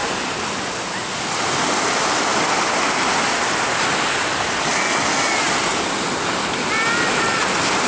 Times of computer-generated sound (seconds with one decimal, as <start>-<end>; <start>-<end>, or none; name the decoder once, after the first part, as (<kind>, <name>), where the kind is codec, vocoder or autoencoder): none